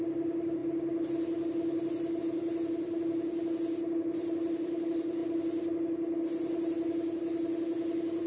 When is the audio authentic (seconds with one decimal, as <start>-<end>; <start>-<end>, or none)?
0.0-8.3